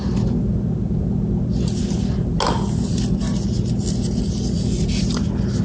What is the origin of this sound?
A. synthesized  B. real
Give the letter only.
B